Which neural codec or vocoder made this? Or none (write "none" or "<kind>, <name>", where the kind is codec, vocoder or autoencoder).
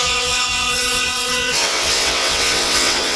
vocoder, WaveNeXt